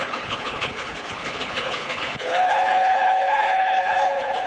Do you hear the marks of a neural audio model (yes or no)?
yes